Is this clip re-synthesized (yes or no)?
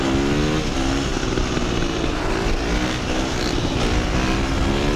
no